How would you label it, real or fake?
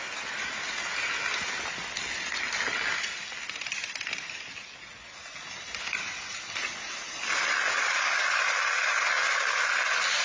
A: real